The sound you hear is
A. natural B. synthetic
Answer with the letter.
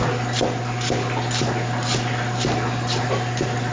A